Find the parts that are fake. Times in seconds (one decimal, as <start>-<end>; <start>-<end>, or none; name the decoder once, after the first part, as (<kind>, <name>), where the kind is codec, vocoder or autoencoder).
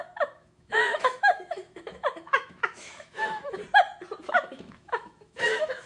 0.0-3.6 (autoencoder, DAC-VAE); 4.2-5.9